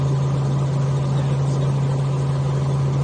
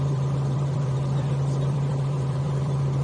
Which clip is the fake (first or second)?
second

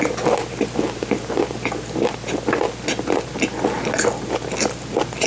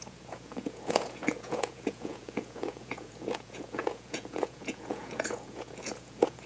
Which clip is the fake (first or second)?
second